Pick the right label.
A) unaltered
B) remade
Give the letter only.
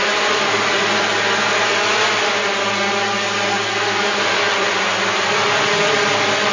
A